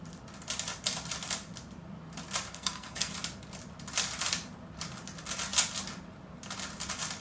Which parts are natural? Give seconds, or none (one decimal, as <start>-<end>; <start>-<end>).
0.0-2.5; 3.1-7.2